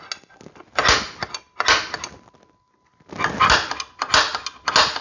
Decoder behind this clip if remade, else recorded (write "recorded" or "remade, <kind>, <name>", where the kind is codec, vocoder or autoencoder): recorded